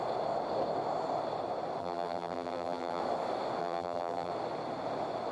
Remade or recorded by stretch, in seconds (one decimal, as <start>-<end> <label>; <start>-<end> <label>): 0.0-1.8 recorded; 1.8-3.0 remade; 3.0-3.6 recorded; 3.6-4.3 remade; 4.3-5.3 recorded